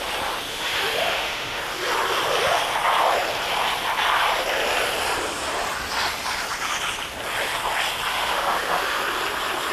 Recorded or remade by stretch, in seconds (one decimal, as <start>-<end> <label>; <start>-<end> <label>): 0.0-0.5 recorded; 0.5-1.6 remade; 1.6-8.1 recorded; 8.1-9.0 remade; 9.0-9.7 recorded